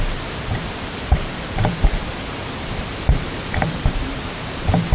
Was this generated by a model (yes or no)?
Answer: yes